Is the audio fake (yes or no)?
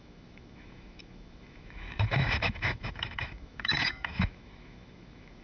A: yes